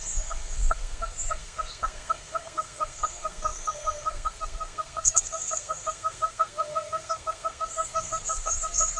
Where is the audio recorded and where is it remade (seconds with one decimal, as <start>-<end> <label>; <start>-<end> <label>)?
0.0-9.0 remade